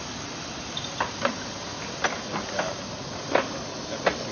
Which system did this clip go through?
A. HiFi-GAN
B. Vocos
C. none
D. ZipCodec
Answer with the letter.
C